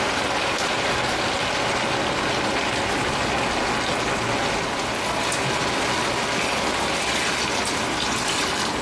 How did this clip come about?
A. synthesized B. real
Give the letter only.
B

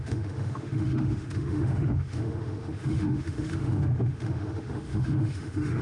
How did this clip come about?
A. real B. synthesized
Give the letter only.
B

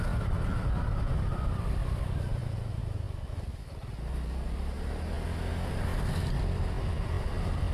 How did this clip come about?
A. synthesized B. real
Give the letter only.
B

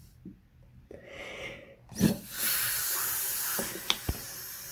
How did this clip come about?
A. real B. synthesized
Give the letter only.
A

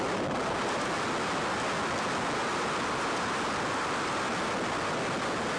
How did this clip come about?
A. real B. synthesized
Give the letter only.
A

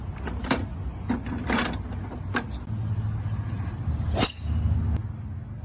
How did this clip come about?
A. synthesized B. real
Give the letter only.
B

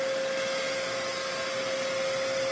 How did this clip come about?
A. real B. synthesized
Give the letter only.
A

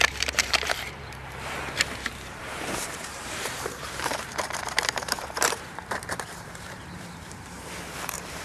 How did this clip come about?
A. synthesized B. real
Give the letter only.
A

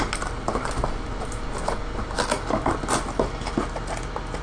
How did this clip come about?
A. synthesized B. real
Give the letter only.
B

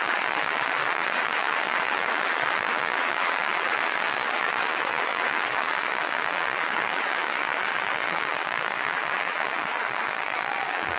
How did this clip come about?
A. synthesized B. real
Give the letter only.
A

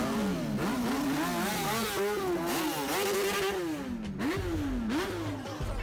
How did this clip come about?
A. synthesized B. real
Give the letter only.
B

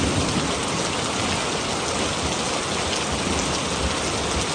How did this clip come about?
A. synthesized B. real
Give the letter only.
B